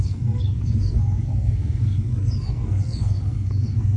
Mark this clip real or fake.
fake